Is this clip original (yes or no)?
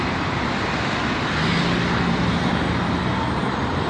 yes